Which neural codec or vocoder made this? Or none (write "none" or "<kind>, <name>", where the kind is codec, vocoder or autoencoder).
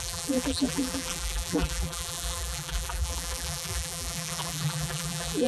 vocoder, BigVGAN v2